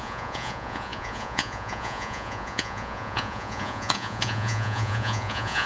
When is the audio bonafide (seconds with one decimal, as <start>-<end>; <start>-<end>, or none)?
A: none